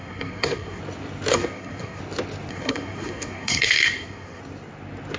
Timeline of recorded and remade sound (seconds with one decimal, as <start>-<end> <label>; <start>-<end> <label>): 0.0-0.8 remade; 0.8-1.3 recorded; 1.3-2.0 remade; 2.0-2.5 recorded; 2.5-4.4 remade; 4.4-5.2 recorded